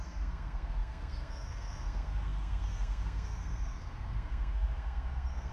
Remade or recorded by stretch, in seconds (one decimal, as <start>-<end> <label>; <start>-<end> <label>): 0.0-5.5 remade